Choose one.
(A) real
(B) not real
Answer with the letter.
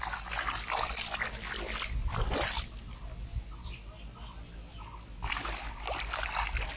A